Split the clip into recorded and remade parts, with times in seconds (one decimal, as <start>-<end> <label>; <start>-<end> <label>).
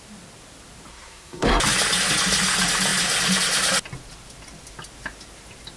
0.0-0.9 recorded; 0.9-1.5 remade; 1.5-5.8 recorded